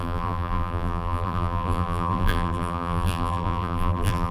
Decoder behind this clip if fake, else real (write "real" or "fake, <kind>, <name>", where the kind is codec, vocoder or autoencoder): fake, vocoder, BigVGAN v2